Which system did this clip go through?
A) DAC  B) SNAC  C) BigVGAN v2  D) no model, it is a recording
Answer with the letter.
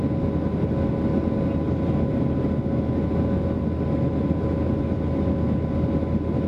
D